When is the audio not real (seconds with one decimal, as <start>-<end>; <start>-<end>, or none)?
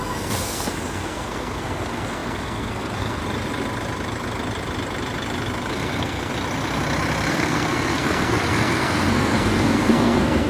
0.0-3.2; 5.7-6.3; 7.3-10.5